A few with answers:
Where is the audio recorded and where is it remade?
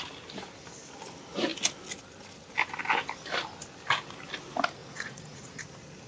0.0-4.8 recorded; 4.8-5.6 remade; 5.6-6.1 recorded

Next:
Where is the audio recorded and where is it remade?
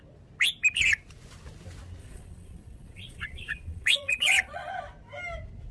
0.0-2.0 recorded; 2.0-4.7 remade; 4.7-5.7 recorded